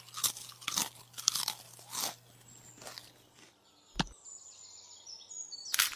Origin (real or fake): real